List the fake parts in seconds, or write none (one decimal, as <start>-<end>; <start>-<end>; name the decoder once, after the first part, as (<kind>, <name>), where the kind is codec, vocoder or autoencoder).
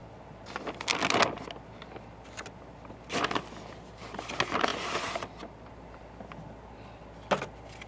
none